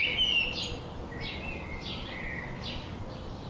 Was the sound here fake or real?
real